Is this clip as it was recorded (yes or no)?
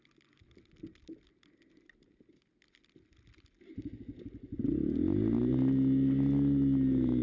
yes